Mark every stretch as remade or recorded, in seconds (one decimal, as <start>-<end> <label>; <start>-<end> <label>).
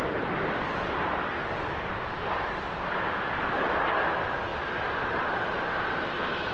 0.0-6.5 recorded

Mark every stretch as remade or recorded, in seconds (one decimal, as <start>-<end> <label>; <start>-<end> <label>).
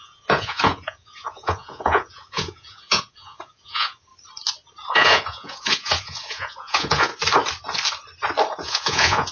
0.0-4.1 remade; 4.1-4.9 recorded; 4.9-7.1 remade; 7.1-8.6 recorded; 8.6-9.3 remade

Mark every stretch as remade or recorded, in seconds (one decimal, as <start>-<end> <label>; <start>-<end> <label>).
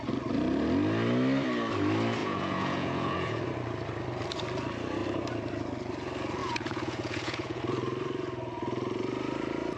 0.0-2.2 recorded; 2.2-3.4 remade; 3.4-6.4 recorded; 6.4-7.6 remade; 7.6-9.8 recorded